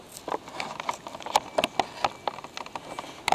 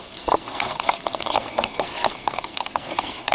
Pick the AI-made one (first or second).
second